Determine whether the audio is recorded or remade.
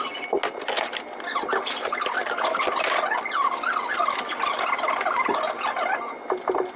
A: recorded